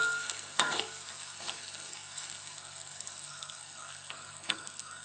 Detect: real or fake fake